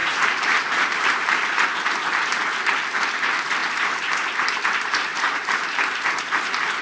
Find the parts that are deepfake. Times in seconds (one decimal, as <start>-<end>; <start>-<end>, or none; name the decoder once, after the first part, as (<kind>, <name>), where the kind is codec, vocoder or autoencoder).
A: 0.0-1.3 (vocoder, BigVGAN v2); 3.6-4.6; 5.1-5.8